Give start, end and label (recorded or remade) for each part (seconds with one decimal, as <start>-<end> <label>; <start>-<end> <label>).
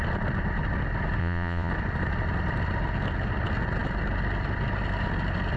0.0-1.2 recorded; 1.2-1.7 remade; 1.7-5.6 recorded